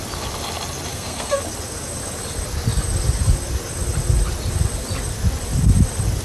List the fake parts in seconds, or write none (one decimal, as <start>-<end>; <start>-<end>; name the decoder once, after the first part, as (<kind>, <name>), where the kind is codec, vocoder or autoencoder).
0.9-1.4 (codec, SNAC)